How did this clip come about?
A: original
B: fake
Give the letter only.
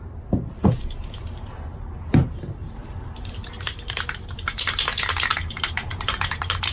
B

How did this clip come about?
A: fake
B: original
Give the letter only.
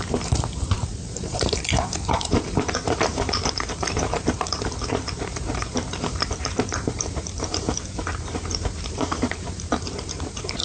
A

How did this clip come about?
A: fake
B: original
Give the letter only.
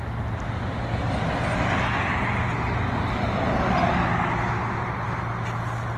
B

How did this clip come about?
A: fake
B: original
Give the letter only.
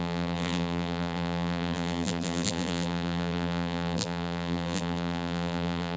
A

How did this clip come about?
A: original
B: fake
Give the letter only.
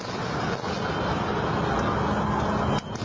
A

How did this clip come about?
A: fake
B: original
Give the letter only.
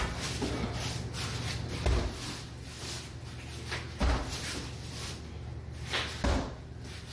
B